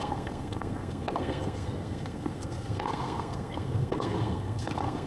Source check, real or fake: fake